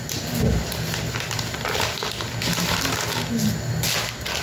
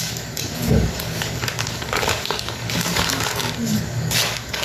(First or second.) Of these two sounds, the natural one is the first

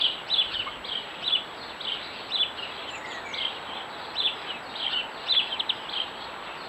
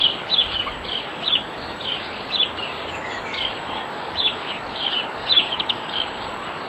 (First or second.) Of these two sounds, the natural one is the first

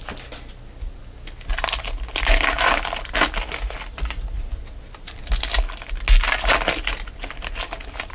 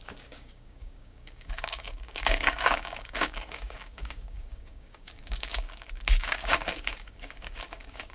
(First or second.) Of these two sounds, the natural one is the first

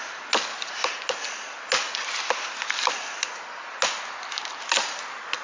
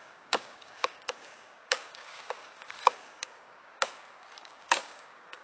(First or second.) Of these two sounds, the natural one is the first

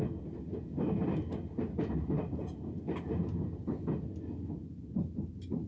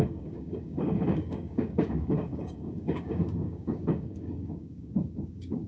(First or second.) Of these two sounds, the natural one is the first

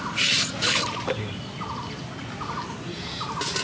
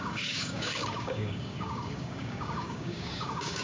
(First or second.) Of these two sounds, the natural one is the first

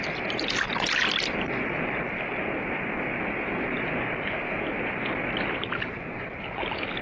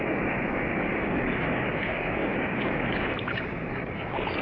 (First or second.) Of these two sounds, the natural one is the first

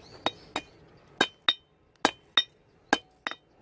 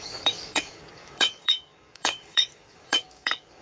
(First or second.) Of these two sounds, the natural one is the first